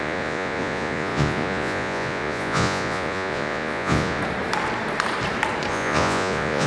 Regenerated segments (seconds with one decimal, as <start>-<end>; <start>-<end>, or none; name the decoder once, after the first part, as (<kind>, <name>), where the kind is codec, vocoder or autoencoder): 0.0-4.2 (vocoder, Vocos); 5.7-6.7